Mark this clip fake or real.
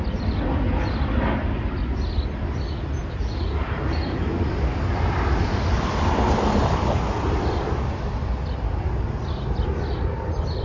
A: real